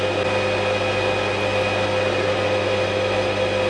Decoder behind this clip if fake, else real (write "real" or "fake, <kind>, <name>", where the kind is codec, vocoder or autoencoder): real